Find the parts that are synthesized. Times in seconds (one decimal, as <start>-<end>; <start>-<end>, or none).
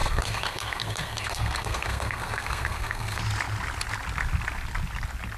0.0-3.2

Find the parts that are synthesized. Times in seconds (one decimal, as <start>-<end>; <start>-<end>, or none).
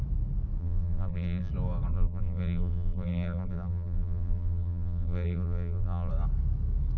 0.6-1.5; 1.9-6.1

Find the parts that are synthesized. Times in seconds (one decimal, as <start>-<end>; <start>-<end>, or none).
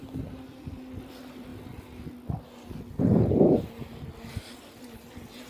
none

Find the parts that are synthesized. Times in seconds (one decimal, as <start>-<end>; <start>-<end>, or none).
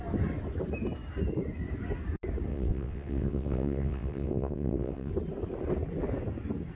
2.5-5.1